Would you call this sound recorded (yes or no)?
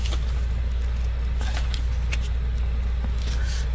yes